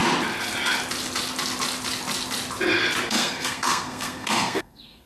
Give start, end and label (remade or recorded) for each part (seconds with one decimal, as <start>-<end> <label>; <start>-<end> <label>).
0.0-3.1 recorded; 3.1-5.1 remade